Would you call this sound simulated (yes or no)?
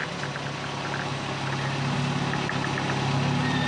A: no